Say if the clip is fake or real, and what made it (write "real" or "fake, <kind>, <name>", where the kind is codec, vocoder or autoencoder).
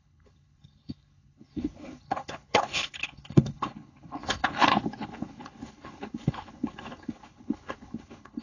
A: fake, codec, HILCodec